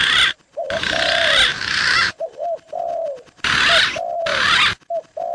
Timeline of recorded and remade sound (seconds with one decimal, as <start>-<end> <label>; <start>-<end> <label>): 0.0-1.5 recorded; 1.5-2.8 remade; 2.8-5.3 recorded